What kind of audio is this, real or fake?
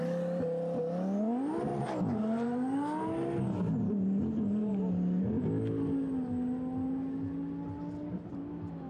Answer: real